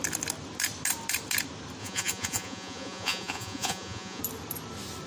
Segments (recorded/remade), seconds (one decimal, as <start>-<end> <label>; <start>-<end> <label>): 0.0-1.8 recorded; 1.8-4.2 remade; 4.2-5.1 recorded